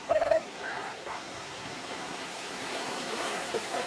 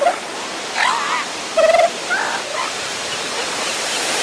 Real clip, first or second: second